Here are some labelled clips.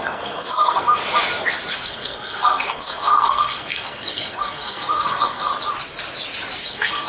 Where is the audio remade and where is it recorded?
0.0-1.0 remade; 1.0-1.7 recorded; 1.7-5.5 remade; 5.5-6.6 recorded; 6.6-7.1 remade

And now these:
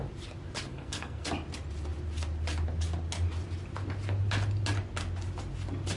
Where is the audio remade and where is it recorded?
0.0-0.7 recorded; 0.7-1.3 remade; 1.3-6.0 recorded

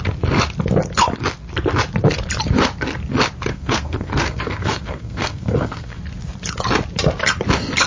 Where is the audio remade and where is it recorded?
0.0-3.5 recorded; 3.5-6.0 remade; 6.0-7.9 recorded

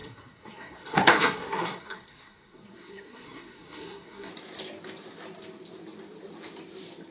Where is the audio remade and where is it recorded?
0.0-4.3 remade; 4.3-7.1 recorded

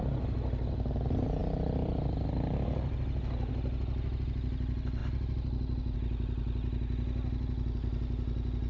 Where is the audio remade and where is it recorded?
0.0-8.7 recorded

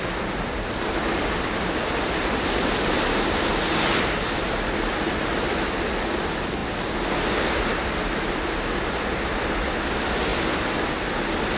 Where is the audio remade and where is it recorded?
0.0-11.6 recorded

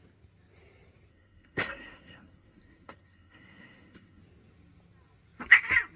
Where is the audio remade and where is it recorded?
0.0-1.1 recorded; 1.1-4.2 remade; 4.2-6.0 recorded